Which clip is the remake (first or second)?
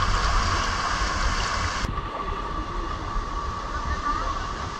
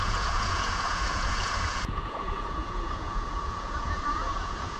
second